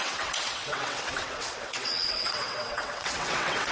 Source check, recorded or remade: remade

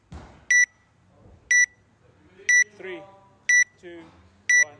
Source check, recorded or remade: recorded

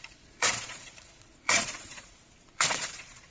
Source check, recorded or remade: remade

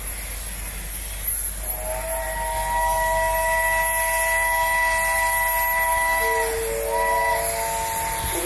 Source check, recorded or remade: recorded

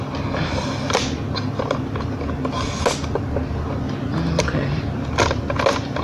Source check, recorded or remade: recorded